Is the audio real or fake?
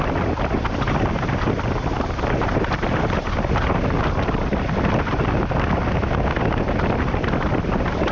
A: real